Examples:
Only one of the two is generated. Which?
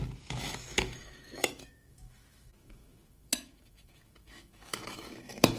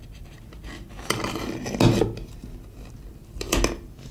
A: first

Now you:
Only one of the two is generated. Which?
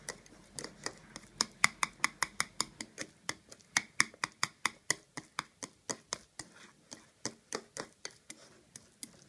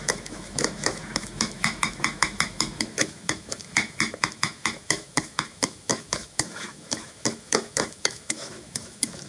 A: second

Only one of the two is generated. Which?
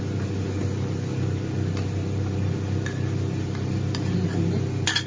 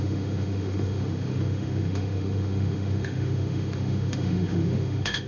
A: second